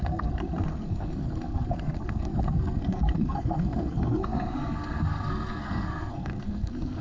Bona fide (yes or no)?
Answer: no